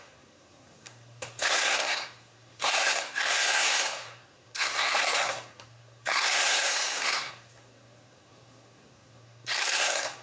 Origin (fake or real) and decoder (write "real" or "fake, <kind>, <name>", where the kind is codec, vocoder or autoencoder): fake, codec, SNAC